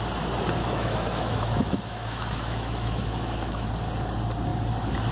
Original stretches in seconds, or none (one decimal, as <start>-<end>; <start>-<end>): 0.0-0.6; 3.7-5.1

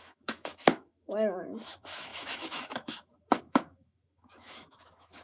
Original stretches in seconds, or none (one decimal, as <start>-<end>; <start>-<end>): none